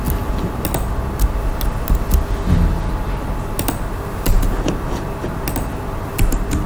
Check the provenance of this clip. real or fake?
real